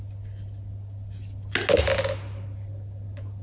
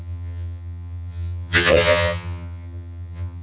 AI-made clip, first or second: second